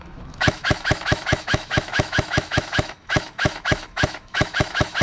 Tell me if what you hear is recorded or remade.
remade